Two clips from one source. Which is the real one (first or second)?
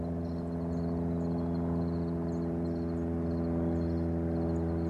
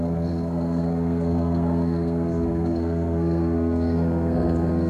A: first